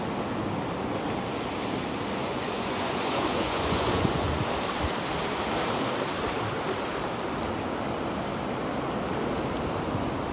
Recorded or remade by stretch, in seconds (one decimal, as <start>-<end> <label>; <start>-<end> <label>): 0.0-2.2 recorded; 2.2-4.4 remade; 4.4-10.3 recorded